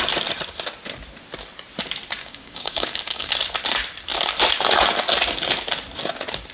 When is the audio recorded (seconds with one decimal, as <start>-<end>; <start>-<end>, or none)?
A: 0.0-2.2; 3.3-6.5